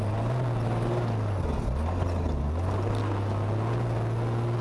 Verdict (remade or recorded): recorded